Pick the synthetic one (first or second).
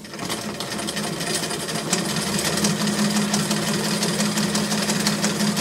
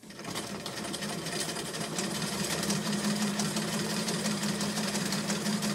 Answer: second